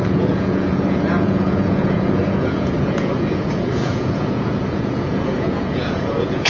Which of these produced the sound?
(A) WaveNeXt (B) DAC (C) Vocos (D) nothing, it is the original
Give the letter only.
C